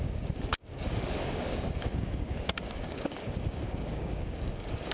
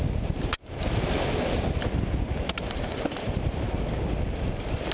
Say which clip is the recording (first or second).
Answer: second